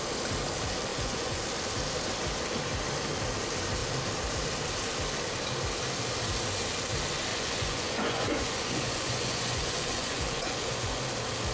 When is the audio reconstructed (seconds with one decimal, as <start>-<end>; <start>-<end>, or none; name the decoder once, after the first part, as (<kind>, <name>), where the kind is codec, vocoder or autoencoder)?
0.9-1.4 (vocoder, Vocos); 7.3-11.0